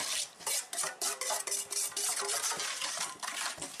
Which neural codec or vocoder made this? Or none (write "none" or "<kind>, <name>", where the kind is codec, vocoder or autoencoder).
none